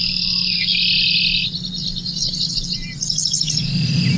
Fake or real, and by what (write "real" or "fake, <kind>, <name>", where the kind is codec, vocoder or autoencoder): real